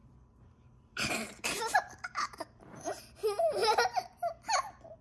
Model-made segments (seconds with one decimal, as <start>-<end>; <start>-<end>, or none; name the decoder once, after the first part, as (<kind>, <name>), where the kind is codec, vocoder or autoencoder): 0.0-3.0 (vocoder, BigVGAN v2)